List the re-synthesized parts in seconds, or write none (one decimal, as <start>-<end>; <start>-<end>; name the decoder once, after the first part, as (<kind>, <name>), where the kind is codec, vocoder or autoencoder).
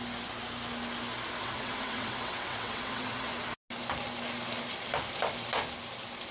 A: 1.4-3.3 (vocoder, WaveNeXt)